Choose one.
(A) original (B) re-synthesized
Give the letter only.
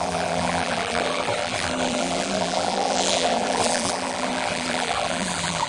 B